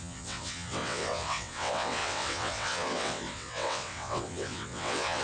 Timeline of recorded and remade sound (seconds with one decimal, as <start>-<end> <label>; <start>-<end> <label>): 0.0-5.2 remade